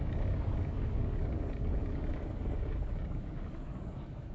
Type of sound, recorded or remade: remade